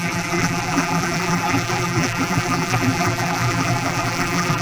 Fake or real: fake